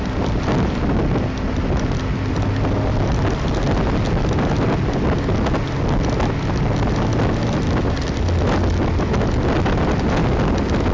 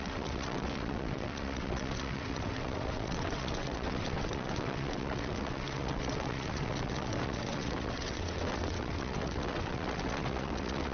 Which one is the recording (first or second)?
first